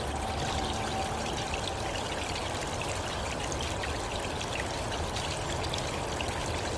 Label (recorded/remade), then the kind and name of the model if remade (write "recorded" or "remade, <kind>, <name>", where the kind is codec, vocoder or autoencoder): recorded